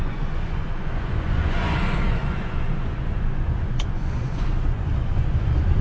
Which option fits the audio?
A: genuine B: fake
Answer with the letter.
B